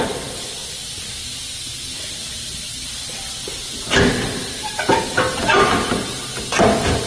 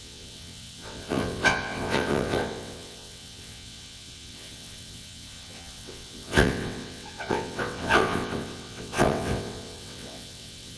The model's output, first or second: second